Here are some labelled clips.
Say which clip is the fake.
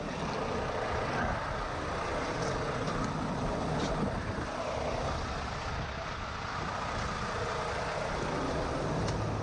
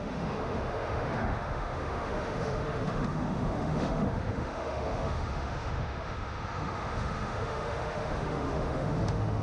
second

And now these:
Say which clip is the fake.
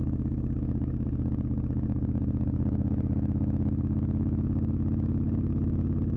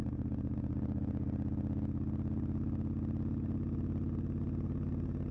first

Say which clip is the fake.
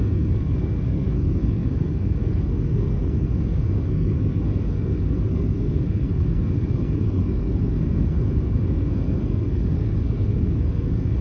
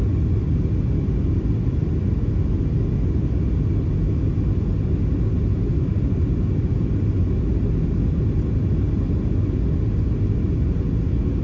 first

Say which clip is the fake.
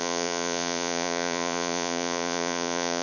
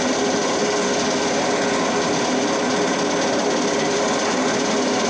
first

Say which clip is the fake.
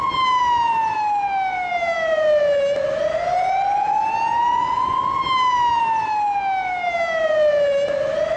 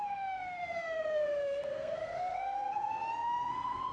second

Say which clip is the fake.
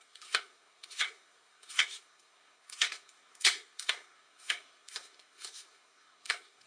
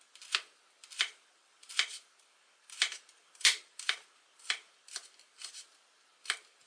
first